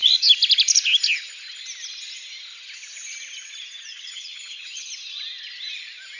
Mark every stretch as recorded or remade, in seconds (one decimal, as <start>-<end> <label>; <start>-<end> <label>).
0.0-3.9 recorded; 3.9-4.9 remade; 4.9-6.2 recorded